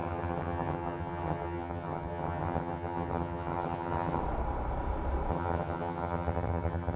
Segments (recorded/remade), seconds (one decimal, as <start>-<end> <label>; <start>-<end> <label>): 0.0-4.2 remade; 4.2-5.3 recorded; 5.3-7.0 remade